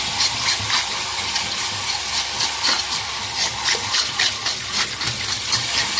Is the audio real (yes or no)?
yes